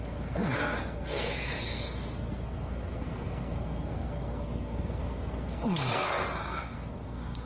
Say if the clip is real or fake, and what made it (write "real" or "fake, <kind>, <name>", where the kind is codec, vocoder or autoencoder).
fake, codec, SNAC